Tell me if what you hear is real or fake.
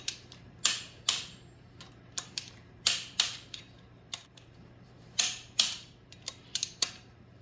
fake